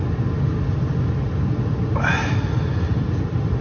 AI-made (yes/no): no